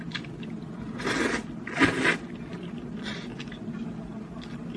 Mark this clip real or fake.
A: real